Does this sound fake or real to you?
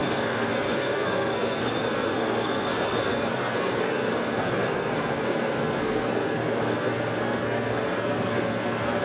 fake